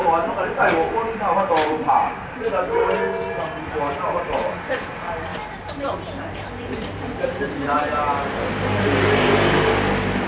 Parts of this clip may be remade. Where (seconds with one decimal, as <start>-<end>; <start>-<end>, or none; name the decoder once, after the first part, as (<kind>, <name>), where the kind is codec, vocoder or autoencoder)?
none